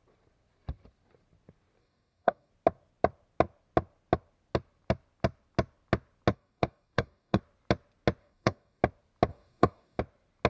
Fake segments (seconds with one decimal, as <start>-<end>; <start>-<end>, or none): 1.8-2.5; 6.3-7.4; 8.2-8.8; 9.3-10.0